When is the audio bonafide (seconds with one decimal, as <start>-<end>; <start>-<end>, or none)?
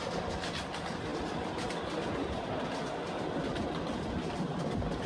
0.0-5.1